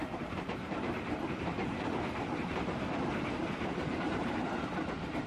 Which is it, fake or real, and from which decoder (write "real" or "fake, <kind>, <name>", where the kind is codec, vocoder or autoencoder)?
fake, vocoder, BigVGAN v2